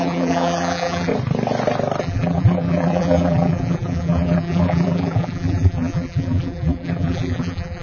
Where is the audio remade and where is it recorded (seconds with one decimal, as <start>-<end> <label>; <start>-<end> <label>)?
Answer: 0.0-1.1 remade; 1.1-2.0 recorded; 2.0-7.8 remade